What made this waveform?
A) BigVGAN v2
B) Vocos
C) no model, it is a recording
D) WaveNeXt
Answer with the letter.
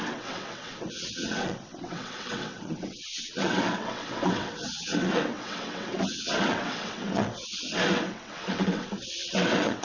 D